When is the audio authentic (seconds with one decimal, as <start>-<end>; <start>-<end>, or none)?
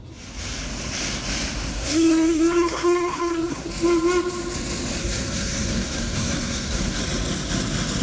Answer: 0.0-1.7; 3.7-5.0; 7.0-8.0